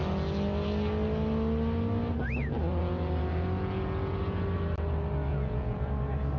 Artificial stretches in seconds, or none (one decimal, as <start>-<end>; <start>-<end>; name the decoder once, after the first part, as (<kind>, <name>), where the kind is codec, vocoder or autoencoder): 5.3-5.9 (vocoder, Vocos)